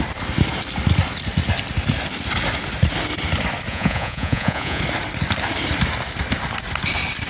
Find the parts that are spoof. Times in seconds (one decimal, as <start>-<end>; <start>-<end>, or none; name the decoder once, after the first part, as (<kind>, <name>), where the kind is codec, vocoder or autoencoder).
3.7-4.8 (vocoder, Vocos)